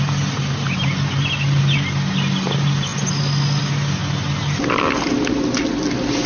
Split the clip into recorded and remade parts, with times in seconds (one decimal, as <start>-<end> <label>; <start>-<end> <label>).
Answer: 0.0-6.3 recorded